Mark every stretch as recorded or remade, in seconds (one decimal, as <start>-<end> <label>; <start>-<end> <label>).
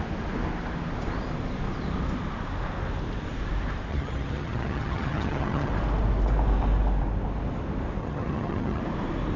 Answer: 0.0-3.9 recorded; 3.9-5.7 remade; 5.7-8.0 recorded; 8.0-8.8 remade; 8.8-9.4 recorded